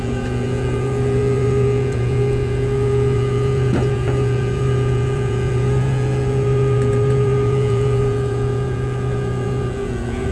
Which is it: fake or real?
fake